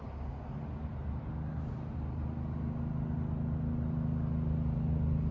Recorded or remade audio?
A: recorded